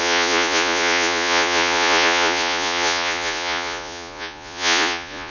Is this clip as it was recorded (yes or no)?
no